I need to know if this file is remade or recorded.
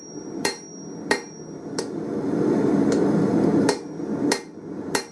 remade